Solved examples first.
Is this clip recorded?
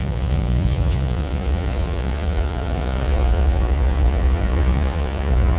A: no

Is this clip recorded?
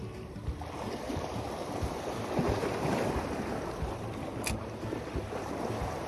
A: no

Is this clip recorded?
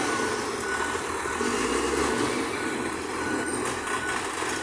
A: yes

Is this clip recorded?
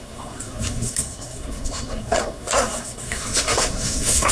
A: no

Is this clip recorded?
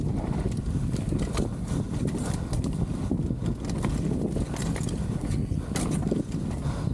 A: yes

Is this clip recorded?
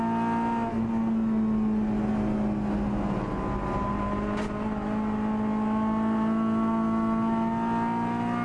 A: yes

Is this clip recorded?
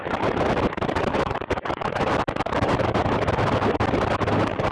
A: no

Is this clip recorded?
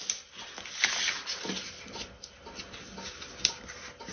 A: yes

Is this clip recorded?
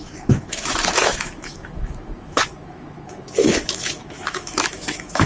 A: no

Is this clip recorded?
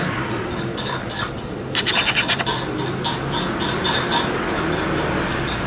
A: yes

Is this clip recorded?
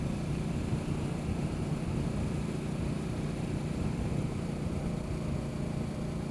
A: yes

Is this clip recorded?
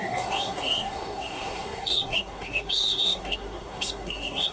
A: no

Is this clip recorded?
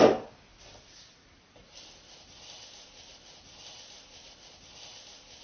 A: yes